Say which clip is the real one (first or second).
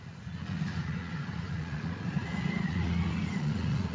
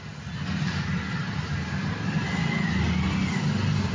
second